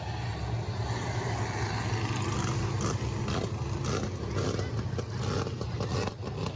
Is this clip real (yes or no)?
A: yes